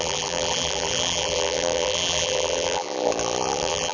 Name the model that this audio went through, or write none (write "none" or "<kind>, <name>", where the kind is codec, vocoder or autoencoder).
vocoder, BigVGAN v2